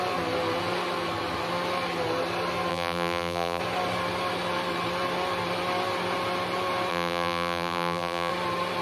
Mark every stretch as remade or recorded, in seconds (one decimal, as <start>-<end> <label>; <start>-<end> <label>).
0.0-2.7 recorded; 2.7-3.6 remade; 3.6-6.9 recorded; 6.9-8.3 remade; 8.3-8.8 recorded